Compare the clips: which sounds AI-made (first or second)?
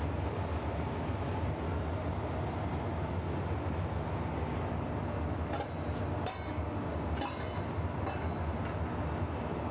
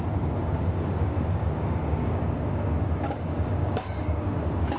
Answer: second